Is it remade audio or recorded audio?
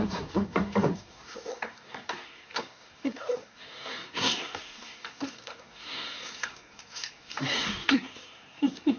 remade